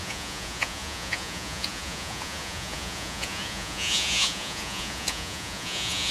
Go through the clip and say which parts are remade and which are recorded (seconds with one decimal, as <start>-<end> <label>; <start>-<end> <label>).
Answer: 0.0-6.1 remade